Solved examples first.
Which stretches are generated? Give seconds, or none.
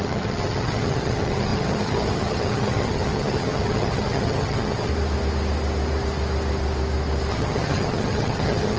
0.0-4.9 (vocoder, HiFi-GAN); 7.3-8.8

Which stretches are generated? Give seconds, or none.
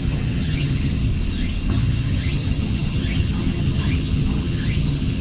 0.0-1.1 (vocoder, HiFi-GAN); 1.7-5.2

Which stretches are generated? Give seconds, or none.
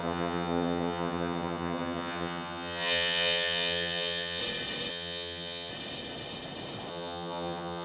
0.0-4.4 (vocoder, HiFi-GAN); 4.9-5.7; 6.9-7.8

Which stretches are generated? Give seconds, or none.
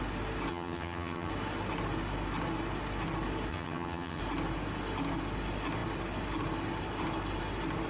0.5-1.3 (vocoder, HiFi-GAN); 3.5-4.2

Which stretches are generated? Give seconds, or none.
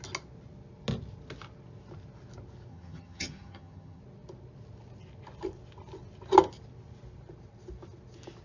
2.7-4.0 (vocoder, HiFi-GAN)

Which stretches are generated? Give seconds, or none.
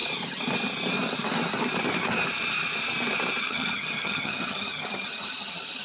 3.4-5.8 (vocoder, HiFi-GAN)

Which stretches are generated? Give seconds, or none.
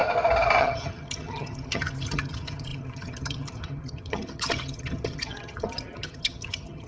0.6-6.9 (vocoder, HiFi-GAN)